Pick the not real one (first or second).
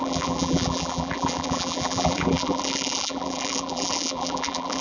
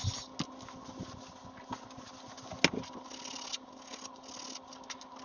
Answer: first